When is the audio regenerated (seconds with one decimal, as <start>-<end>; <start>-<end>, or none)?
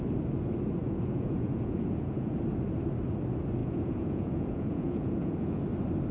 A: 0.8-2.4; 3.6-5.6